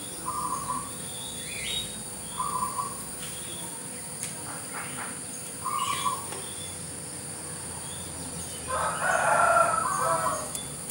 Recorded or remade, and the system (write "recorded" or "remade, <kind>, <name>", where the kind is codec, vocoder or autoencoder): recorded